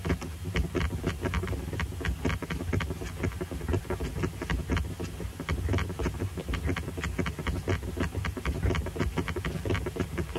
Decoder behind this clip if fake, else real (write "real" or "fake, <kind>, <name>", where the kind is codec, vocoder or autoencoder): real